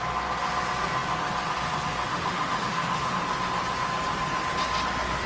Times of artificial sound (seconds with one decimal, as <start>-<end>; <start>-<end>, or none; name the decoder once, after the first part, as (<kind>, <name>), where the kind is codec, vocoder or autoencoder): 2.1-3.2 (autoencoder, DAC-VAE)